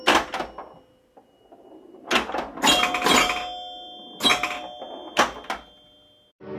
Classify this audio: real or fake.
real